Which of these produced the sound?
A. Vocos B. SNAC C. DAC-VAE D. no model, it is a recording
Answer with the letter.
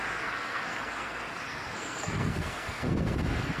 B